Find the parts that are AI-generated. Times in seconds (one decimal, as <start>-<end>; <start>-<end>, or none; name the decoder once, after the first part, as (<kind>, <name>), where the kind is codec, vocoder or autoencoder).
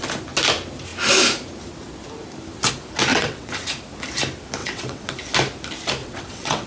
3.1-3.6 (vocoder, WaveNeXt); 4.6-5.1; 6.0-6.7